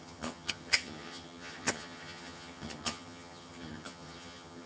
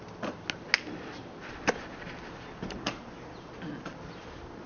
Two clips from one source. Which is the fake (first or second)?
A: first